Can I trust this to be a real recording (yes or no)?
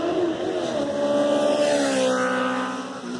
yes